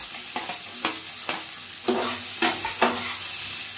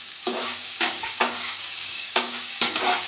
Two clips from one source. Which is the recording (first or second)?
first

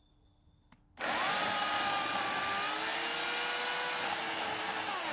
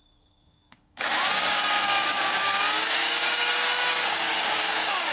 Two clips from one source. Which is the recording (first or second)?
first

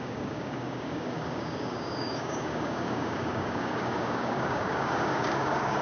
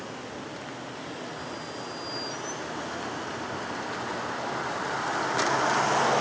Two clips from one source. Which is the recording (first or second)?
second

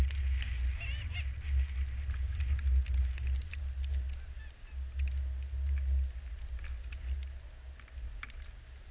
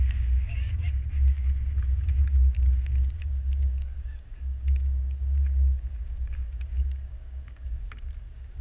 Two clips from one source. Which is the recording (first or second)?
first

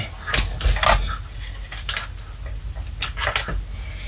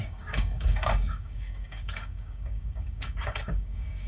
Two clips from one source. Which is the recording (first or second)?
first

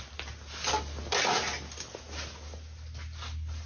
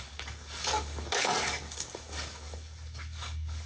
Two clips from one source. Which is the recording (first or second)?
first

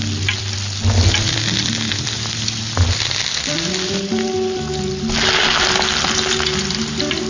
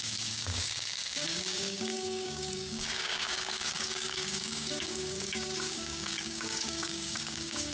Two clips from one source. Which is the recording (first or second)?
first